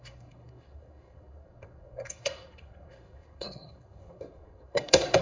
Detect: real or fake fake